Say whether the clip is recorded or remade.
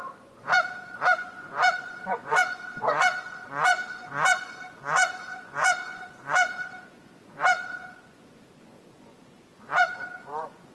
remade